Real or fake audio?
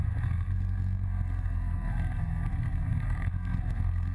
fake